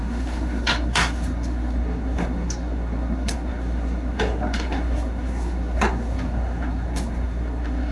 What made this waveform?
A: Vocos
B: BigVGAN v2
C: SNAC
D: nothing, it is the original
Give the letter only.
C